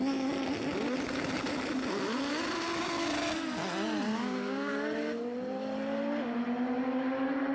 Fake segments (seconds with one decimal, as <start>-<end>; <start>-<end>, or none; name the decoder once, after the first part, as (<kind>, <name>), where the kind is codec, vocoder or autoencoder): 4.1-4.7 (codec, DAC)

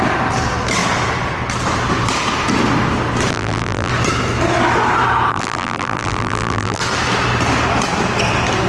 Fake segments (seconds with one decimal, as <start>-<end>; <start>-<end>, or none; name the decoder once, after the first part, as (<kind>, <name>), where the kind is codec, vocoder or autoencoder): 3.3-3.9 (vocoder, BigVGAN v2); 5.3-6.8